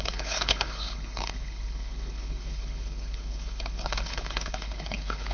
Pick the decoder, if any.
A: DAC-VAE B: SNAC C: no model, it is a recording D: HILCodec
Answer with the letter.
D